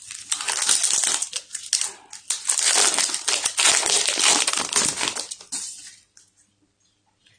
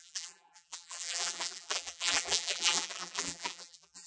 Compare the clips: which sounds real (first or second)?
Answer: first